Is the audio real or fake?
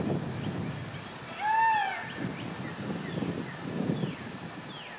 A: real